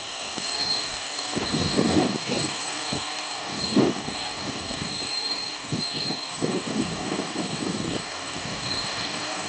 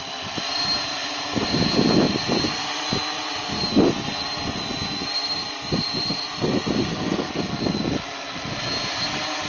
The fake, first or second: first